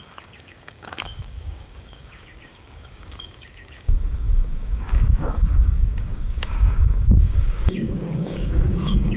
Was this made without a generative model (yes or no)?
no